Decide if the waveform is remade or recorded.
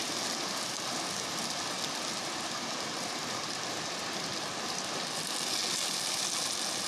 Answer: recorded